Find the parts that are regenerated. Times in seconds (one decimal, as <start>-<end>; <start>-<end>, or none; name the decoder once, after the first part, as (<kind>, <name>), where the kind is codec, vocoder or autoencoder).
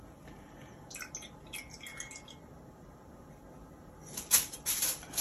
none